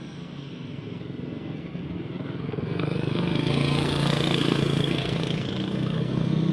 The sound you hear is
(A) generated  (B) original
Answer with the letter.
A